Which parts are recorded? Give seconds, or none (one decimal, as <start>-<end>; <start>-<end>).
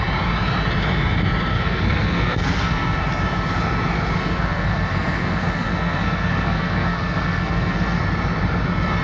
0.0-1.5; 3.0-4.2; 8.0-9.0